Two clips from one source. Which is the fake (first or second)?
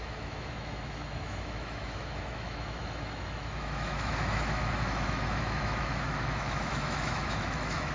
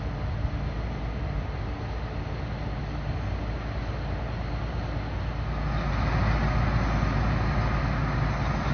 first